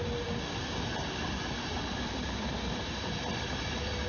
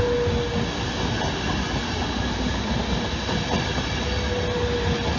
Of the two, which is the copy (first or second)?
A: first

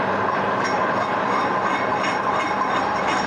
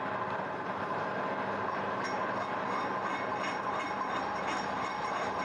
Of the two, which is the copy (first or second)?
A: first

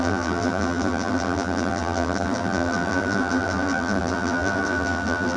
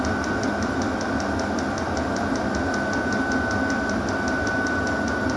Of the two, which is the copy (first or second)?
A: first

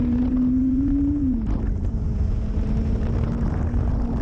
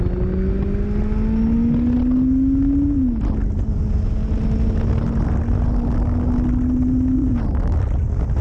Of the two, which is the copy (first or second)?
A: first